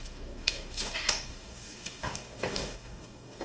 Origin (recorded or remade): remade